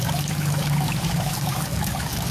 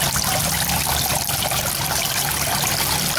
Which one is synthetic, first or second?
first